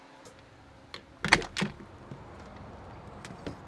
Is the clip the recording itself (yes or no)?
yes